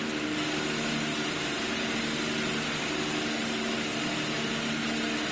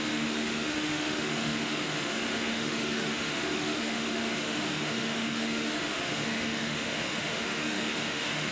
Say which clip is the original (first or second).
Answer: first